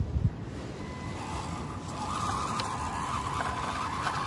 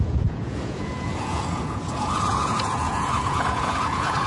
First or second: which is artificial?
second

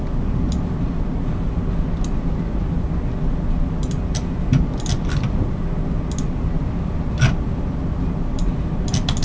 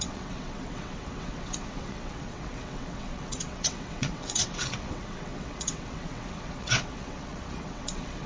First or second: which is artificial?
second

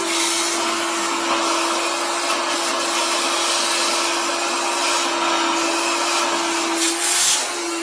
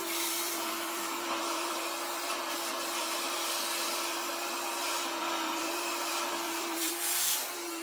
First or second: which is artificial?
second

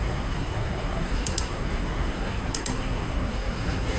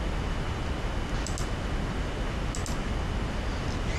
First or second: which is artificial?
first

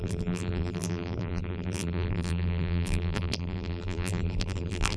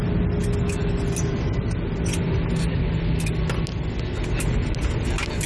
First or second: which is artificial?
first